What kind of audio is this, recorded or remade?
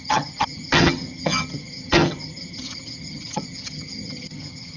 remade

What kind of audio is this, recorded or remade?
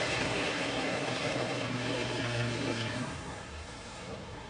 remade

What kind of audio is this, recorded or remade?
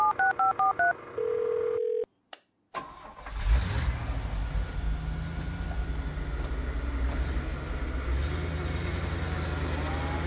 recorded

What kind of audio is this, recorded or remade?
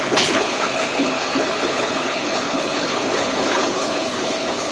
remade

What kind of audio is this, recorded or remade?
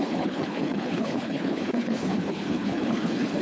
remade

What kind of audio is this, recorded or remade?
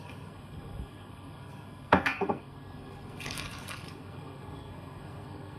remade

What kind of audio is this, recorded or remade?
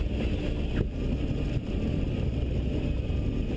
recorded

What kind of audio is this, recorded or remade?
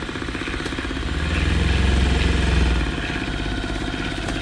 recorded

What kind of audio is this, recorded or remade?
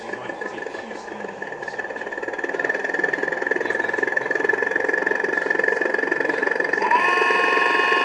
recorded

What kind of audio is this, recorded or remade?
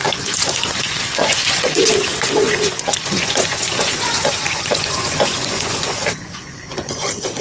remade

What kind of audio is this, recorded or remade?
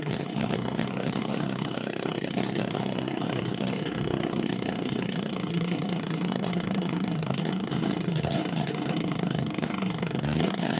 remade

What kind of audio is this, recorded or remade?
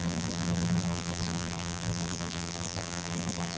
remade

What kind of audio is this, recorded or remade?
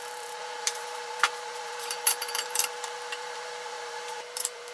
remade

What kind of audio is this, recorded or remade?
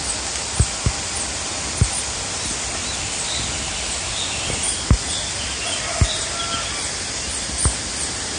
recorded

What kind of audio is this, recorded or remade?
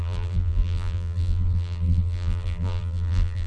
remade